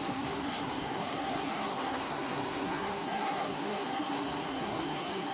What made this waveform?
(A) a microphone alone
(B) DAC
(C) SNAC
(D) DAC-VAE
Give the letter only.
C